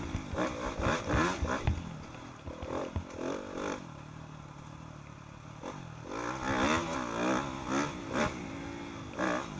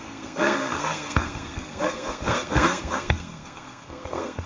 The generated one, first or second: second